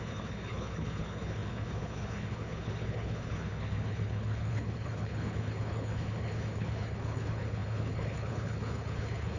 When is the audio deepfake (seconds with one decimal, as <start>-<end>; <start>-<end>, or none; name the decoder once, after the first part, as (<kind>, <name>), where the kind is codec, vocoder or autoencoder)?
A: 0.0-9.4 (codec, HILCodec)